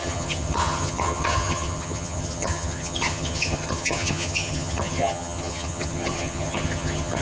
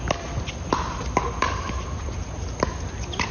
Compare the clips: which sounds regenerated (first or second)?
first